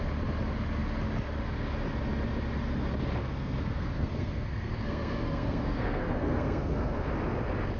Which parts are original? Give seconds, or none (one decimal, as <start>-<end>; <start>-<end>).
0.0-3.2; 7.1-7.8